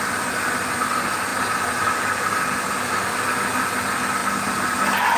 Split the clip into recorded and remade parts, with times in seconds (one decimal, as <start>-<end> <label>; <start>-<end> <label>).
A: 0.0-5.2 recorded